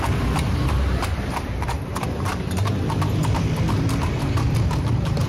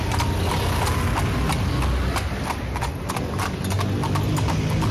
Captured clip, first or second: second